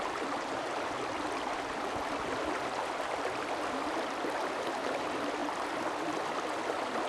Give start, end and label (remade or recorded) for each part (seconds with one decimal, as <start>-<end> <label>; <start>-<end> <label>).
0.0-7.1 recorded